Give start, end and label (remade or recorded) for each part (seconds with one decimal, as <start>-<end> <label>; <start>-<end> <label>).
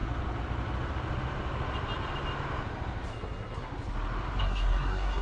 0.0-3.1 recorded; 3.1-3.7 remade; 3.7-4.4 recorded; 4.4-5.2 remade